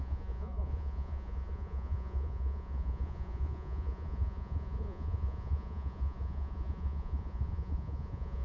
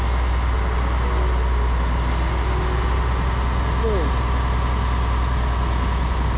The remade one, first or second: first